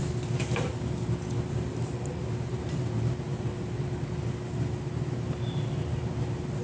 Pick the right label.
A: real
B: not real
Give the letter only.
A